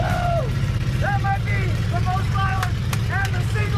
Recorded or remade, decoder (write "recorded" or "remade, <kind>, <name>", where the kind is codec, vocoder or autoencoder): remade, vocoder, BigVGAN v2